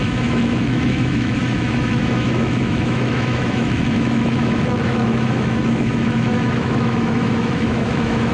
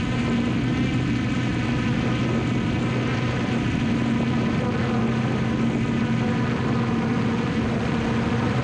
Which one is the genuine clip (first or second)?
second